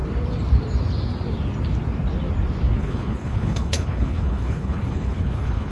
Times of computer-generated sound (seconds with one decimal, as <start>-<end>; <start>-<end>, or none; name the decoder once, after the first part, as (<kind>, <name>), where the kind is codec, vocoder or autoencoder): 2.8-5.7 (codec, HILCodec)